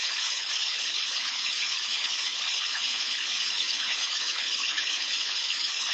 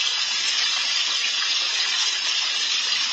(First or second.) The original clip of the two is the second